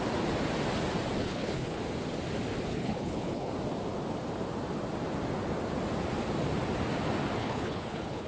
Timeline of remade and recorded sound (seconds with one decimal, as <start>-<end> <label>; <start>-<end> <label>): 0.0-1.2 recorded; 1.2-1.8 remade; 1.8-2.7 recorded; 2.7-3.5 remade; 3.5-7.4 recorded; 7.4-8.3 remade